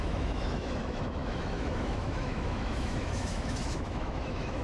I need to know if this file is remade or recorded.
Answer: remade